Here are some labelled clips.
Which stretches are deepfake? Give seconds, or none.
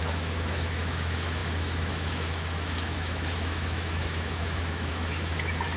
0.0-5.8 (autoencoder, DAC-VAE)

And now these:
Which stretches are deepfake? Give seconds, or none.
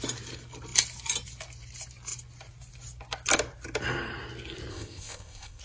4.7-5.6 (codec, ZipCodec)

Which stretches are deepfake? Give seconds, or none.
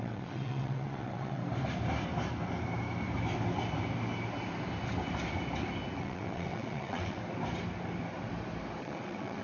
0.0-1.4 (vocoder, WaveNeXt); 6.0-7.2; 8.8-9.4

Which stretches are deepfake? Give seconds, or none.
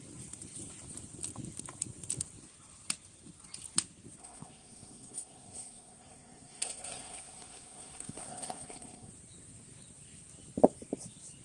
4.2-9.1 (codec, SNAC)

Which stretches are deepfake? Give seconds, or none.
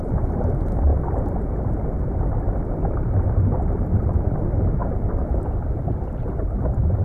0.0-4.8 (vocoder, BigVGAN v2); 6.2-7.0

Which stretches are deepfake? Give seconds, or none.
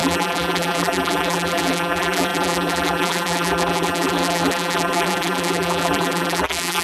0.0-6.8 (vocoder, BigVGAN v2)